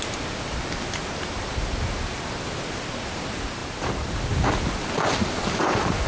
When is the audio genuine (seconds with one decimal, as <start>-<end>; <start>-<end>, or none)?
0.0-6.1